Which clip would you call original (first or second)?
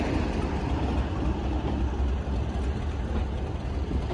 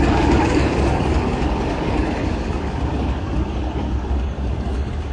first